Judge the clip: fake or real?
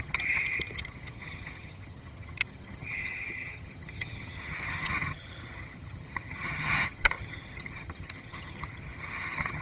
fake